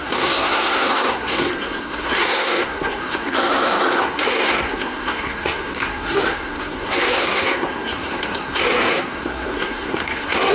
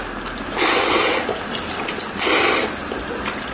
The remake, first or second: first